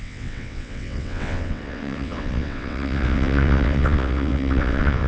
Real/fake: fake